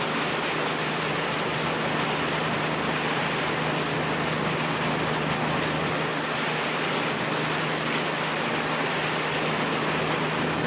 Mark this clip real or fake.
real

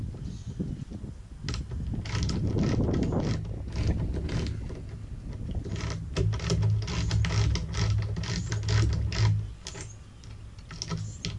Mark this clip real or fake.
real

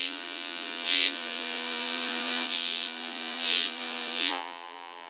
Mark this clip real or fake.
fake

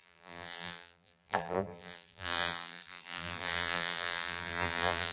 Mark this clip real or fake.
fake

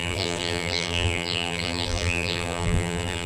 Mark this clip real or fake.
fake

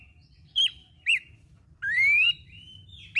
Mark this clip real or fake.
fake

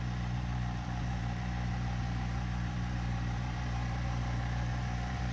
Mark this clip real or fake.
fake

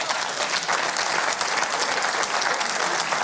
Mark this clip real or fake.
real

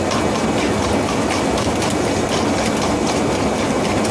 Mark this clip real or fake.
real